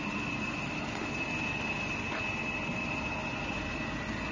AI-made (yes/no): no